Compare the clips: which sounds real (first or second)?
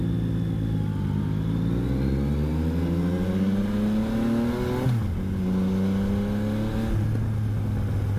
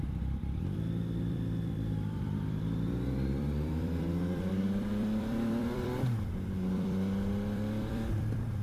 first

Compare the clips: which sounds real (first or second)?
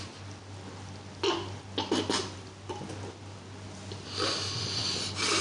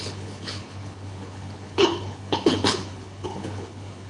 first